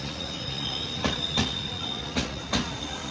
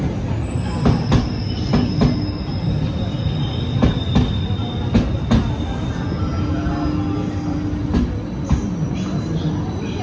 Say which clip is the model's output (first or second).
first